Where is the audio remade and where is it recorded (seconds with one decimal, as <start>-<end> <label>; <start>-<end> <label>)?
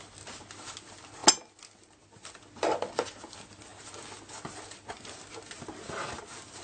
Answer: 0.0-6.6 recorded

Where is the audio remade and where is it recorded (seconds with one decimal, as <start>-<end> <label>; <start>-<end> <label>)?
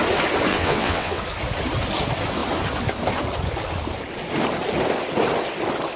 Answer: 0.0-0.5 recorded; 0.5-1.2 remade; 1.2-6.0 recorded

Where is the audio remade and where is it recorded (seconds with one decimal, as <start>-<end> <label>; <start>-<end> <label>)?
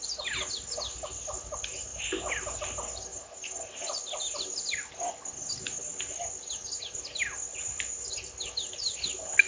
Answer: 0.0-9.5 recorded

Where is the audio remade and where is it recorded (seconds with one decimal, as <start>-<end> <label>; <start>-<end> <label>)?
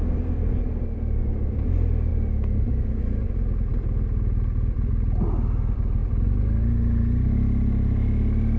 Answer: 0.0-8.6 recorded